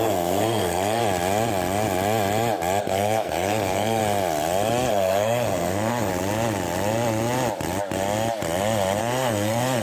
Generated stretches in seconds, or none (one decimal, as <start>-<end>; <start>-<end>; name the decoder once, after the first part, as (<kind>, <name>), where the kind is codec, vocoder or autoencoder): 0.0-1.0 (codec, SNAC); 2.8-4.0; 4.9-6.1; 9.0-9.8